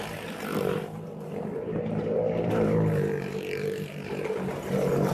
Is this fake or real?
fake